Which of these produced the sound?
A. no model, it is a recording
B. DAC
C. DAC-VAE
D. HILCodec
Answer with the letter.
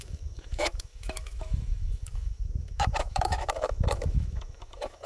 C